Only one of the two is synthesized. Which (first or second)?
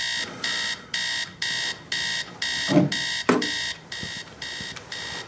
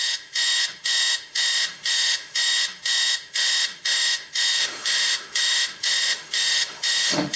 second